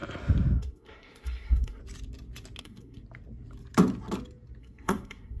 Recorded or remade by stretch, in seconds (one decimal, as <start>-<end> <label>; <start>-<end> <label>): 0.0-0.6 recorded; 0.6-1.8 remade; 1.8-2.6 recorded; 2.6-3.0 remade; 3.0-4.6 recorded; 4.6-5.4 remade